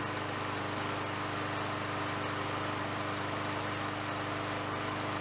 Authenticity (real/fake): real